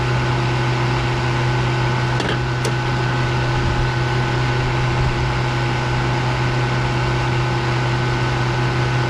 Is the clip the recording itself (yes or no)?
yes